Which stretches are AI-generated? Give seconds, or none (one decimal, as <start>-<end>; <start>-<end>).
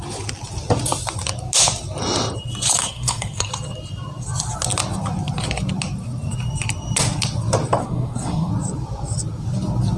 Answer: 2.8-3.5; 7.8-8.5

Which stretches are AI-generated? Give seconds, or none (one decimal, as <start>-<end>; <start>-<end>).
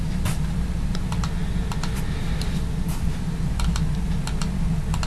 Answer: none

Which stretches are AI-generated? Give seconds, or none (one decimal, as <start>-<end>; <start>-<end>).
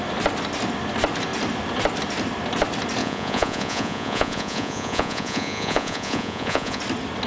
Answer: 3.0-6.8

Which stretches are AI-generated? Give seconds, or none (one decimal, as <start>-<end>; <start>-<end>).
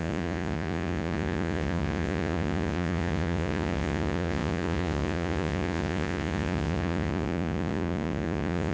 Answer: 0.0-8.7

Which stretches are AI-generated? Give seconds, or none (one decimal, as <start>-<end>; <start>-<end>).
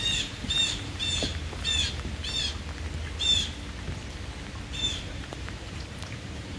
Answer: 0.0-1.3; 4.8-6.6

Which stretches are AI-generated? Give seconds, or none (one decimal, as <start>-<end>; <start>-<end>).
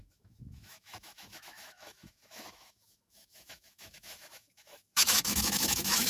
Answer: 0.0-6.1